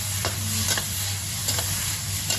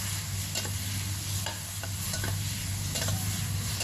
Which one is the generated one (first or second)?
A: first